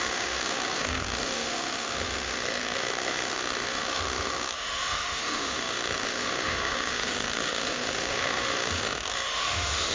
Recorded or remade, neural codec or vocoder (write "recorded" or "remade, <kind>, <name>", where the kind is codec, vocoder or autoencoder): remade, autoencoder, DAC-VAE